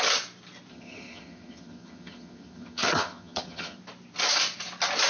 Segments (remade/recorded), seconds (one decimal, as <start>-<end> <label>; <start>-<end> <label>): 0.0-0.7 recorded; 0.7-3.8 remade; 3.8-5.1 recorded